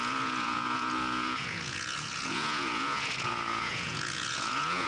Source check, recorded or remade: remade